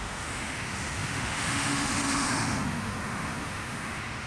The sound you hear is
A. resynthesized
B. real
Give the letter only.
A